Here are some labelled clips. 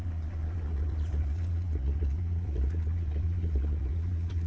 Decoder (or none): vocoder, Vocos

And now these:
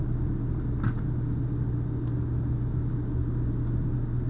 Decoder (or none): none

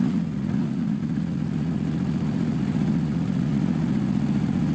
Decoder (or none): vocoder, Vocos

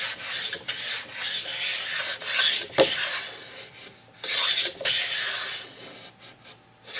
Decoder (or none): none